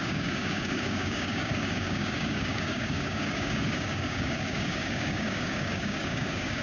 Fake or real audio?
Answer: fake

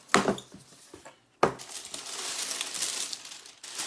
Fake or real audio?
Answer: real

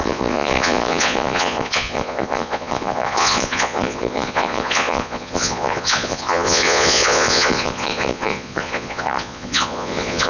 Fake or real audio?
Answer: fake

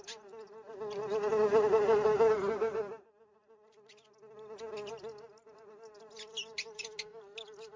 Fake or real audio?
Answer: real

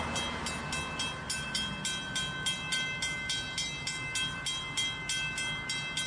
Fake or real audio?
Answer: real